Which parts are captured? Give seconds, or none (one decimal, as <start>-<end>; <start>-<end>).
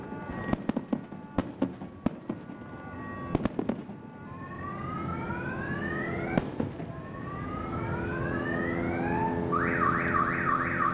0.0-3.8; 4.8-10.9